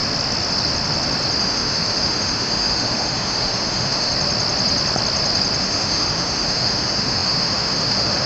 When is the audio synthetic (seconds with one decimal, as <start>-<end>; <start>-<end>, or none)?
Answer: 1.4-4.1; 5.6-8.3